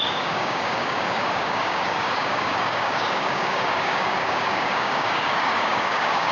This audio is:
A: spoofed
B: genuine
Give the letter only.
A